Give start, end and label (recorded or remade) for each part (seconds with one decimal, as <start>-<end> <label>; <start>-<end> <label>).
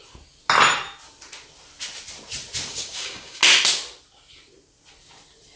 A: 0.0-2.7 recorded; 2.7-3.4 remade; 3.4-5.6 recorded